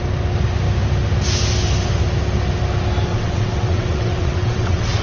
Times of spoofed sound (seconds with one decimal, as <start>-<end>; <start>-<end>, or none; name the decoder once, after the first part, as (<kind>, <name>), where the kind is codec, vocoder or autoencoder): 3.1-5.0 (vocoder, WaveNeXt)